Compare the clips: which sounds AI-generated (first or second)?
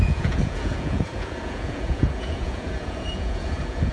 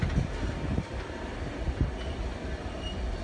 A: first